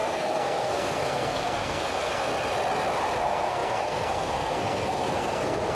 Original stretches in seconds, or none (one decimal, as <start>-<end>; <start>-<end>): 2.3-3.2